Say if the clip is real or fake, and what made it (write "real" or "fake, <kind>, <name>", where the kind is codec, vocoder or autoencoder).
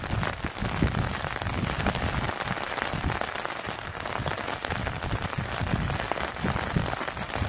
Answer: real